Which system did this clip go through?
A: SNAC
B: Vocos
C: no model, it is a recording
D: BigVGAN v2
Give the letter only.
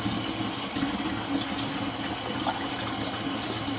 C